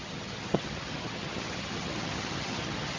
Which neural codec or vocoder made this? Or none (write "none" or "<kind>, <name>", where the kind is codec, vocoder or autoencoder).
vocoder, HiFi-GAN